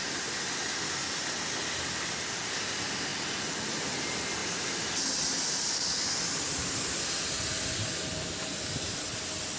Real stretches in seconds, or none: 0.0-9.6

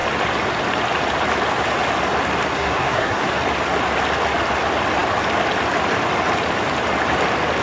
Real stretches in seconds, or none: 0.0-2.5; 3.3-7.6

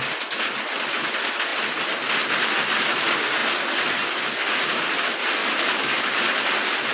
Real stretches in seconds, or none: 0.0-5.4; 6.4-6.9